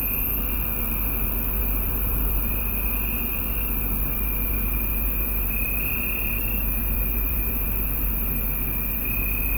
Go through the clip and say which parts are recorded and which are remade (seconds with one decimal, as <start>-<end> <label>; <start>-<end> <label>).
0.0-1.6 recorded; 1.6-2.9 remade; 2.9-6.8 recorded; 6.8-7.5 remade; 7.5-9.6 recorded